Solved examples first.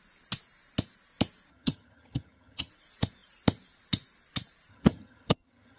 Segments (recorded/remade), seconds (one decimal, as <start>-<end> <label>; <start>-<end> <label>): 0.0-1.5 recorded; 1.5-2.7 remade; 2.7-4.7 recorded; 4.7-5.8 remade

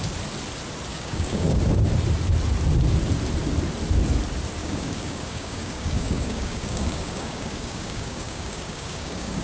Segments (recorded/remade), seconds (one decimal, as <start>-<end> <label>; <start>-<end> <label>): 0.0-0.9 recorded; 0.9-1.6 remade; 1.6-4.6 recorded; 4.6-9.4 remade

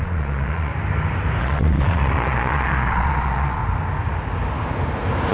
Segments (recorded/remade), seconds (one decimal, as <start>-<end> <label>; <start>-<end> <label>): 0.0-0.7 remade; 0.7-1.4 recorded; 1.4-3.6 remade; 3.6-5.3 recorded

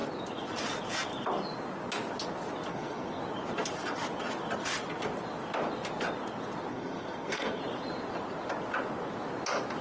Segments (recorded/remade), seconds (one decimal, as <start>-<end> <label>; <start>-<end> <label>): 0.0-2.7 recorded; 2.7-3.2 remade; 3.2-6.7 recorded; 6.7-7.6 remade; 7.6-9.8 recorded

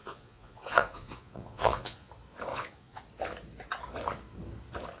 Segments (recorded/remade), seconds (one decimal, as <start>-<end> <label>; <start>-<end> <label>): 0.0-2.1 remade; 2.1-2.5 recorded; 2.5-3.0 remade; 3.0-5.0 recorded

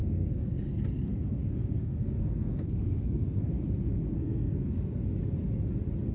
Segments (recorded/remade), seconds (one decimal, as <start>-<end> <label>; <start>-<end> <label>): 0.0-3.5 remade; 3.5-4.1 recorded; 4.1-5.0 remade; 5.0-6.1 recorded